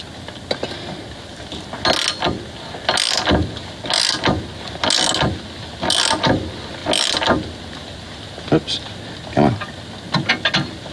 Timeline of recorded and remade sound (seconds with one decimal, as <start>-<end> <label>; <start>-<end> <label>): 0.0-10.9 recorded